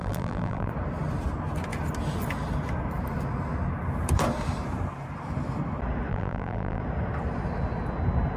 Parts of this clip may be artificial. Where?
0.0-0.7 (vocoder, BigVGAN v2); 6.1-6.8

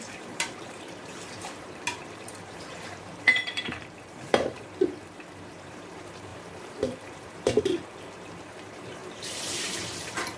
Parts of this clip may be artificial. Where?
0.0-10.4 (vocoder, BigVGAN v2)

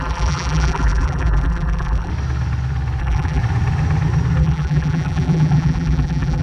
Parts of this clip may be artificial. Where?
0.0-2.1 (vocoder, BigVGAN v2); 3.0-3.4; 4.4-6.4

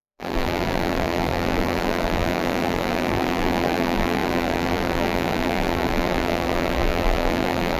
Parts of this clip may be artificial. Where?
0.0-7.8 (vocoder, BigVGAN v2)

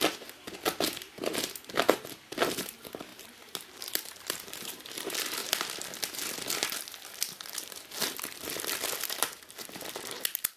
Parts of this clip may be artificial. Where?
3.1-4.8 (vocoder, BigVGAN v2)

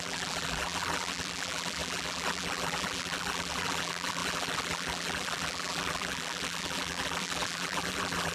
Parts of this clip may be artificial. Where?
0.0-8.3 (vocoder, BigVGAN v2)

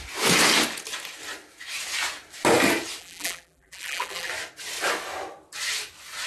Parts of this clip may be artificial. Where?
3.0-4.3 (vocoder, BigVGAN v2)